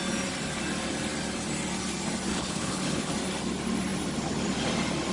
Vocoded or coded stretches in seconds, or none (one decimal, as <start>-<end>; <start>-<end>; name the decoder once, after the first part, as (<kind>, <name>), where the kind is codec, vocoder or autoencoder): 2.3-3.1 (codec, HILCodec)

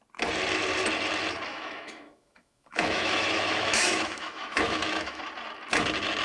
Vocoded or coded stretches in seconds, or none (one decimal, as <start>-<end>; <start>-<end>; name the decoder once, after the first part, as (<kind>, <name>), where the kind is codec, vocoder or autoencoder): 1.5-5.2 (autoencoder, DAC-VAE)